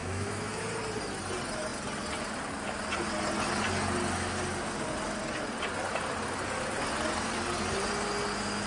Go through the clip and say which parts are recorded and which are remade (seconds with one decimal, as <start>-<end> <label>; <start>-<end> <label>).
0.0-0.6 remade; 0.6-8.7 recorded